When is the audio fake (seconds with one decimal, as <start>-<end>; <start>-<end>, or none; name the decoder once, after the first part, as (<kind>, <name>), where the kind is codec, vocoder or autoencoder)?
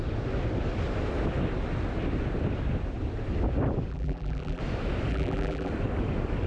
3.9-4.6 (vocoder, BigVGAN v2); 5.1-5.7